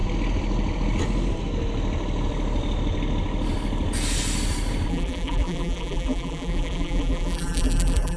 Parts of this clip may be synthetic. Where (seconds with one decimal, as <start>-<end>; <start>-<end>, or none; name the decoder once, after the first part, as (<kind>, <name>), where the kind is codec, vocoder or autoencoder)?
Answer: 4.9-8.2 (vocoder, BigVGAN v2)